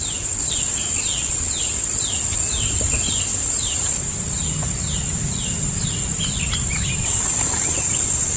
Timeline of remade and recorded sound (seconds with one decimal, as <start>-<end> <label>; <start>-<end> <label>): 0.0-1.1 recorded; 1.1-1.6 remade; 1.6-8.4 recorded